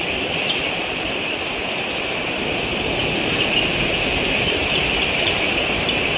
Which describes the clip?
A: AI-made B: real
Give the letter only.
A